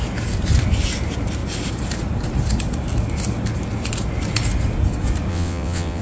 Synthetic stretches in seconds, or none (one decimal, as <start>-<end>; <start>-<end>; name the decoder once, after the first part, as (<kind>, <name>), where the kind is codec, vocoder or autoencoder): 5.3-6.0 (vocoder, WaveNeXt)